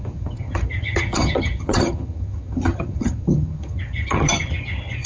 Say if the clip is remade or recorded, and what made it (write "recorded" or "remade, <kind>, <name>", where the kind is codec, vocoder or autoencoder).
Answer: remade, vocoder, HiFi-GAN